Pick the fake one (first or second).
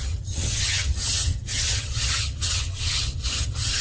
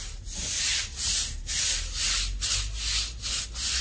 first